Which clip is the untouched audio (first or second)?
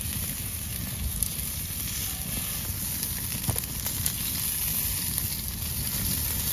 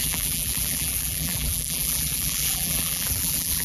first